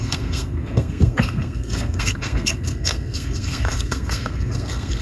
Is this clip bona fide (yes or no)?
no